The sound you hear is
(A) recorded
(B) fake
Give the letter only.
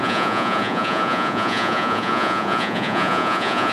B